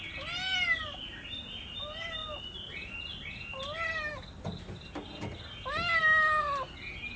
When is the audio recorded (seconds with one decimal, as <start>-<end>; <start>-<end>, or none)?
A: 0.0-0.8; 1.8-7.2